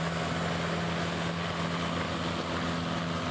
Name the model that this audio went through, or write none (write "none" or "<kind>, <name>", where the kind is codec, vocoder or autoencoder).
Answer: none